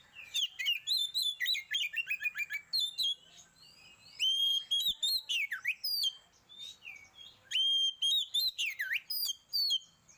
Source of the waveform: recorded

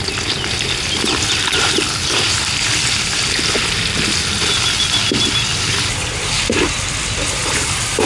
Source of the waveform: recorded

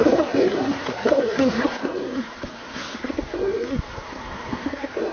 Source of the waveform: remade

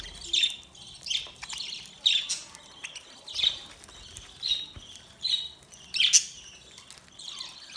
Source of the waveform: recorded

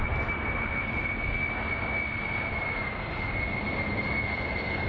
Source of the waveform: recorded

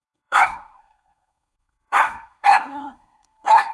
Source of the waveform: remade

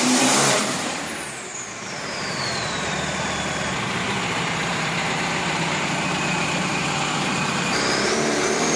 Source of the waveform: remade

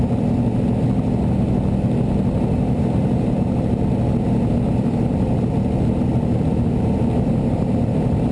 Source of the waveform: recorded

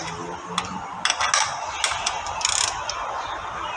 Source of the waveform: recorded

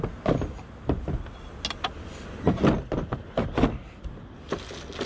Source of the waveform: recorded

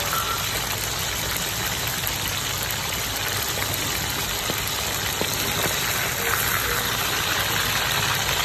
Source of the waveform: recorded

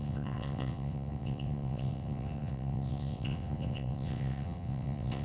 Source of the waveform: remade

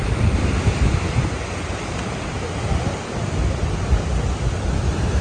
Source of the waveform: recorded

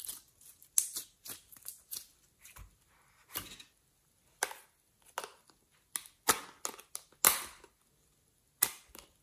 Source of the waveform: recorded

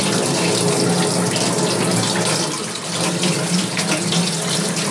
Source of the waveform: recorded